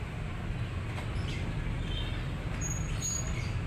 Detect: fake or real real